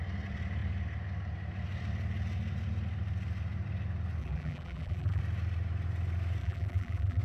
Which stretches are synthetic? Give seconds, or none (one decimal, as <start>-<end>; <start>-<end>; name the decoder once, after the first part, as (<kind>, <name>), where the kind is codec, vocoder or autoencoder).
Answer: 4.2-5.2 (vocoder, BigVGAN v2); 6.4-7.2